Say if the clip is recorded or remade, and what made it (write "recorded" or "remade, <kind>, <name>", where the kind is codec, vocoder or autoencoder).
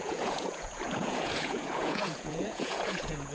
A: remade, vocoder, Vocos